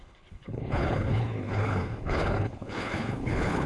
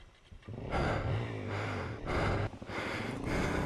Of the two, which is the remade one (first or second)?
first